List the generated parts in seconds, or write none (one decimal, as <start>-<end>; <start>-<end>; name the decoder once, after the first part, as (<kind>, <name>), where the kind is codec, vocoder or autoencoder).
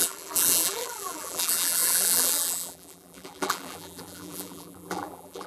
0.0-5.5 (vocoder, BigVGAN v2)